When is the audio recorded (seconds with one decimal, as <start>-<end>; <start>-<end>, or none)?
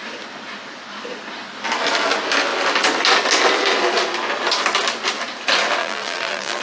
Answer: 0.0-5.8